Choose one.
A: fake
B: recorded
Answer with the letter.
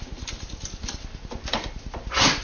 A